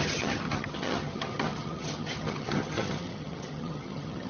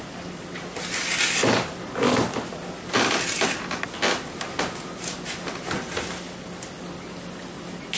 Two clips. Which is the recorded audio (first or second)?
second